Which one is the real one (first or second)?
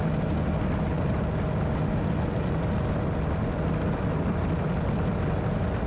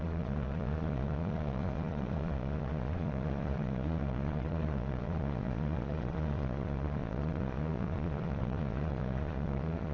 first